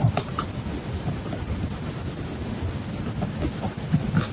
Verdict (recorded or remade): recorded